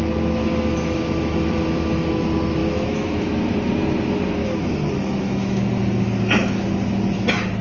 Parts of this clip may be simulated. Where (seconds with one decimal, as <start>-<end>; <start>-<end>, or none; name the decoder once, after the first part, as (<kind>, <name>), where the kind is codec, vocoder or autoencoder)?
0.4-2.2 (autoencoder, DAC-VAE); 2.6-3.3; 4.4-5.7